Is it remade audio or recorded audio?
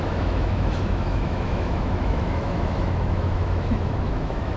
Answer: remade